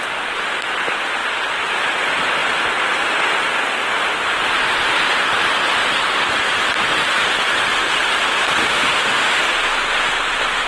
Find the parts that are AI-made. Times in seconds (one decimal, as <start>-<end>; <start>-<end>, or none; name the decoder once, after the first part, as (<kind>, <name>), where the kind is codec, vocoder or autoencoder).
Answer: 8.6-9.4 (autoencoder, DAC-VAE)